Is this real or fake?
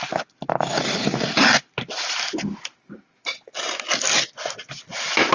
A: real